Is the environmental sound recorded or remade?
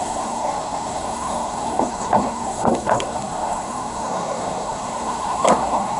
remade